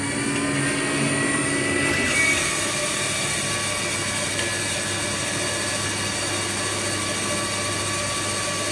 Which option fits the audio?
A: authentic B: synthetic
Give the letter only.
A